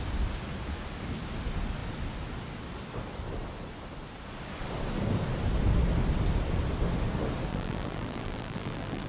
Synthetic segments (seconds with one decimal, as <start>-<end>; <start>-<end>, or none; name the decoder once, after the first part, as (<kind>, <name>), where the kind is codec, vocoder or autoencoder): 7.5-9.1 (vocoder, BigVGAN v2)